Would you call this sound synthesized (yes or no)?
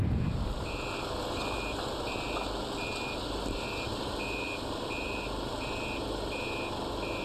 no